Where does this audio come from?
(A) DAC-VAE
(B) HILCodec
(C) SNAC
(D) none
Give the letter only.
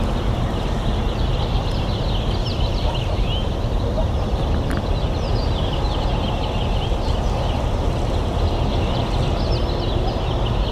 D